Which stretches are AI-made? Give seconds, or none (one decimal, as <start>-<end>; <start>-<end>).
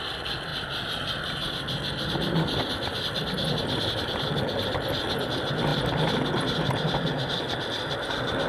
none